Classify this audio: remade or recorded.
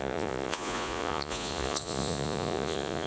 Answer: remade